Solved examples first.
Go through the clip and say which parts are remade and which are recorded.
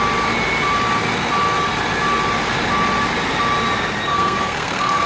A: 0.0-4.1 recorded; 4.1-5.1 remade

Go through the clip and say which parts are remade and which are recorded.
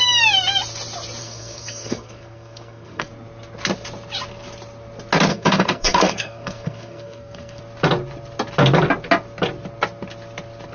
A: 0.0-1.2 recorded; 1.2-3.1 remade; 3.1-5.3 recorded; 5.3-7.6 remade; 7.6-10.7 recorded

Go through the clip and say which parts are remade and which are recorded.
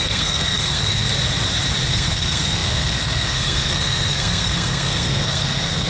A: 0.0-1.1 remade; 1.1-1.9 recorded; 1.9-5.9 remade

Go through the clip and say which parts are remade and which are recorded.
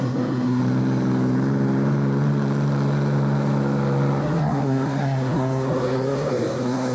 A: 0.0-0.6 remade; 0.6-4.2 recorded; 4.2-6.9 remade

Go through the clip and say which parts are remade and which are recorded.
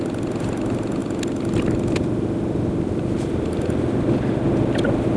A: 0.0-5.2 recorded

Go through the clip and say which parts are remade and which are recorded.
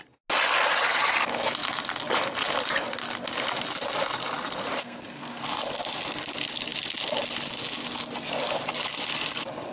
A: 0.0-4.8 recorded; 4.8-5.4 remade; 5.4-9.7 recorded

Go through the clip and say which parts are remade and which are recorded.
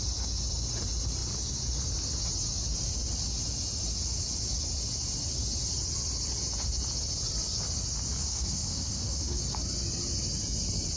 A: 0.0-8.2 recorded; 8.2-9.4 remade; 9.4-11.0 recorded